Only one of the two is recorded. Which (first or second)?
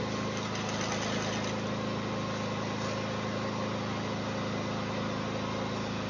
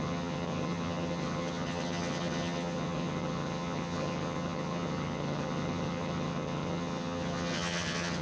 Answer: first